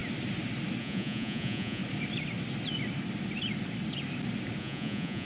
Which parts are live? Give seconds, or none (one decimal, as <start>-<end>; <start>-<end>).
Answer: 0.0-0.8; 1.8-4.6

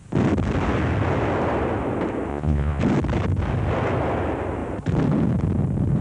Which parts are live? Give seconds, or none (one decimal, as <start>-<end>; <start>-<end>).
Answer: 0.0-2.3; 2.8-6.0

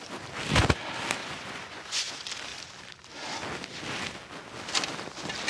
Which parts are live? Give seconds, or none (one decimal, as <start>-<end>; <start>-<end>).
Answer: 0.0-1.2; 2.1-5.5

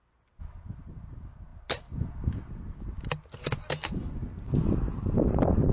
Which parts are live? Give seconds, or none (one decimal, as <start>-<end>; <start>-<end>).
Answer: 0.0-5.7

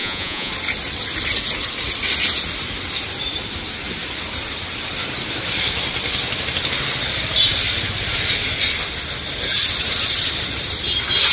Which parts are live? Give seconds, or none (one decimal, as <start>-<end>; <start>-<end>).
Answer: 0.5-11.3

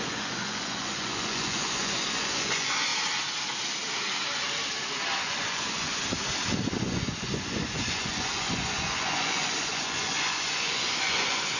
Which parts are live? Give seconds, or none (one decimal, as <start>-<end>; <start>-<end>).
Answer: 2.9-5.2; 6.0-6.8